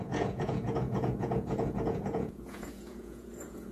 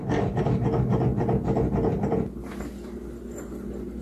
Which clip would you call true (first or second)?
second